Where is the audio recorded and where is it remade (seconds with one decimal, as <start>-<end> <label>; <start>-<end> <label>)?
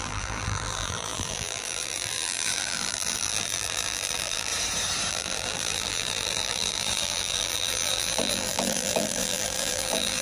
0.0-4.5 remade; 4.5-5.1 recorded; 5.1-10.2 remade